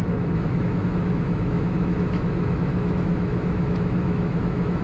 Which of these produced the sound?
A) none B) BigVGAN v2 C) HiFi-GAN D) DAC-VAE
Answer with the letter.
D